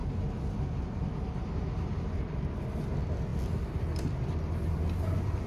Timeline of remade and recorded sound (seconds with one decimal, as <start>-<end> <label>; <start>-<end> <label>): 0.0-5.5 recorded

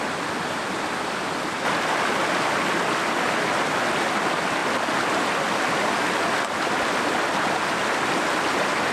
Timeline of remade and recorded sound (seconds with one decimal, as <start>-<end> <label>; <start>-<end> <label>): 0.0-8.9 recorded

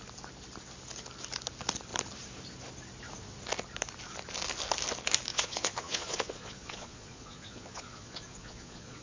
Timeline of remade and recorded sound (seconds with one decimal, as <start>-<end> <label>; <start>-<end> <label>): 0.0-5.3 recorded; 5.3-9.0 remade

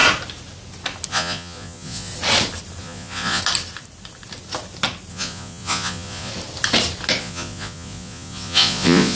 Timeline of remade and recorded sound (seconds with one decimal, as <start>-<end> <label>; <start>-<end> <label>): 0.0-1.1 recorded; 1.1-2.1 remade; 2.1-2.8 recorded; 2.8-3.4 remade; 3.4-5.1 recorded; 5.1-6.3 remade; 6.3-7.2 recorded; 7.2-9.2 remade